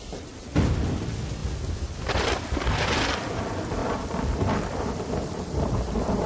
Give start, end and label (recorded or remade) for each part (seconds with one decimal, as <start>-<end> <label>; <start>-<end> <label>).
0.0-6.3 recorded